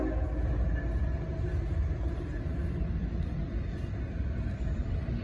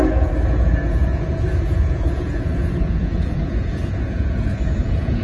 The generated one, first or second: second